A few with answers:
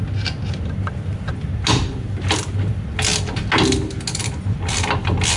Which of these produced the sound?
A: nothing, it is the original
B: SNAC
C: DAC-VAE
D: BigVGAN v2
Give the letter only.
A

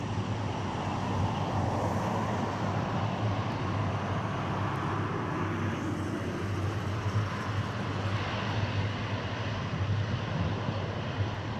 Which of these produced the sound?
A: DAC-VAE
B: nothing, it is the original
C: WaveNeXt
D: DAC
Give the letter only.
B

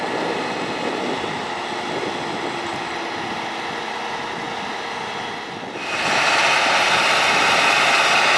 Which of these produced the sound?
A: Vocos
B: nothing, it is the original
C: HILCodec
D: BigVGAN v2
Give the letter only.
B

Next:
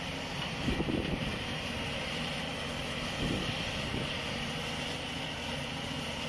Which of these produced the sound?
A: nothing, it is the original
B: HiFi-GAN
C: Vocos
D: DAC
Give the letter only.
A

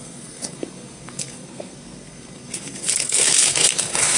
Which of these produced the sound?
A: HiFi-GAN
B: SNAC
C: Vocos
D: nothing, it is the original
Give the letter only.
B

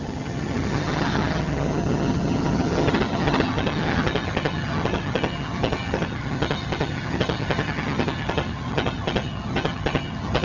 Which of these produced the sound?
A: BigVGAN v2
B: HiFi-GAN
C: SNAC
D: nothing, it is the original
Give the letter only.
B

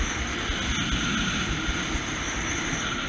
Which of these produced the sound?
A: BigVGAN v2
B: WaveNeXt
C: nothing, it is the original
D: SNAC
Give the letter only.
C